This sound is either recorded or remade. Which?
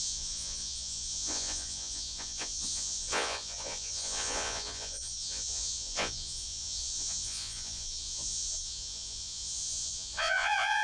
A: remade